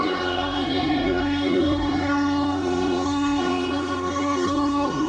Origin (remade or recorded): remade